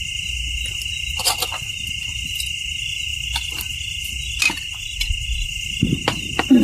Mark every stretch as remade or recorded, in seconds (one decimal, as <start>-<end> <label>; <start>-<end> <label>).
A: 0.0-6.6 recorded